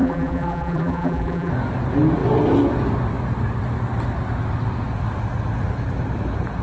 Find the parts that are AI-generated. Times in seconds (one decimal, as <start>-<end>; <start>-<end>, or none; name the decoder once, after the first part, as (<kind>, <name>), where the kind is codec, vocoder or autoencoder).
0.0-1.5 (vocoder, BigVGAN v2)